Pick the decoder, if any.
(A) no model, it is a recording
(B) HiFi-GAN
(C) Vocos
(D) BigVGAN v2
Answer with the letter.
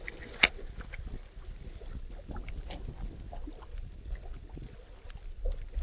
A